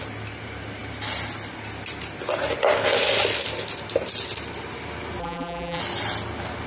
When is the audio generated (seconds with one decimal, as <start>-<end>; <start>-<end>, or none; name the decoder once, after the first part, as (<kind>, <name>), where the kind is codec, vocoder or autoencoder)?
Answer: 5.2-5.8 (vocoder, BigVGAN v2)